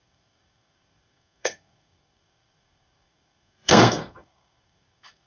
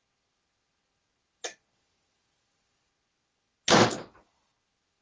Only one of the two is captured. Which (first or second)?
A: second